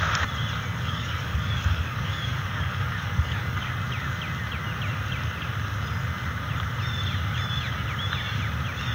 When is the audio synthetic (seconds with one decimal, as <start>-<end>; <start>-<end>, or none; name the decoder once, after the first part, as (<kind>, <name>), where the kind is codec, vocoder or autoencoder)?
0.7-3.7 (codec, DAC)